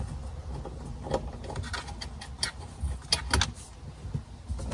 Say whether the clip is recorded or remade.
recorded